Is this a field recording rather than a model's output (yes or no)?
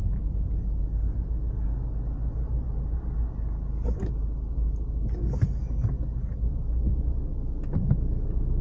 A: yes